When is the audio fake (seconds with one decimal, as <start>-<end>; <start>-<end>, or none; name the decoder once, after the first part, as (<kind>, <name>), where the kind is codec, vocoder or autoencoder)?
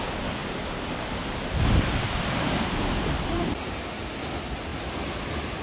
0.4-3.8 (vocoder, BigVGAN v2)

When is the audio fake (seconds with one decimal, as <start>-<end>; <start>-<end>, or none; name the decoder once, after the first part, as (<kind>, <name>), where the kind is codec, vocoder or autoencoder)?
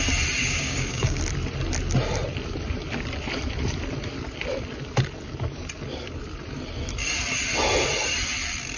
0.4-1.2 (codec, DAC)